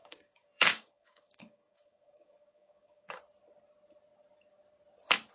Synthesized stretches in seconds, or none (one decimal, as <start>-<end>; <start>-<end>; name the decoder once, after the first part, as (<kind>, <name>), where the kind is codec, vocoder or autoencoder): 0.0-3.2 (codec, DAC)